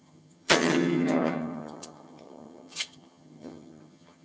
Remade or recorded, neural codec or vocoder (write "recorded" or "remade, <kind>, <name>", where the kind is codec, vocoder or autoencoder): remade, vocoder, HiFi-GAN